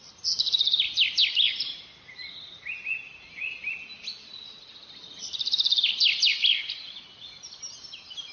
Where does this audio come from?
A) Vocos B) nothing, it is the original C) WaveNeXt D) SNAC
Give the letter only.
B